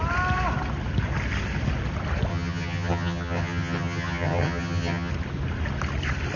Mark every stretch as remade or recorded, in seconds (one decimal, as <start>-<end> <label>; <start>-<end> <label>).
0.0-2.3 recorded; 2.3-5.1 remade; 5.1-6.4 recorded